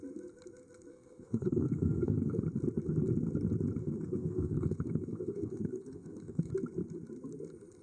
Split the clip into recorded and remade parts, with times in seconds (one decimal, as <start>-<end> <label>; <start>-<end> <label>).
0.0-0.9 recorded; 0.9-2.4 remade; 2.4-3.8 recorded; 3.8-6.5 remade; 6.5-7.8 recorded